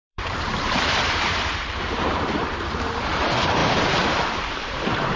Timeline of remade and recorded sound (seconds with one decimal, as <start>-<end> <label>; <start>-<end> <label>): 0.0-5.2 remade